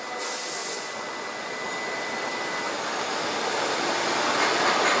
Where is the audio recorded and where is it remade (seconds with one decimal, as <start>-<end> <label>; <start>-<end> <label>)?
0.0-0.6 recorded; 0.6-1.5 remade; 1.5-5.0 recorded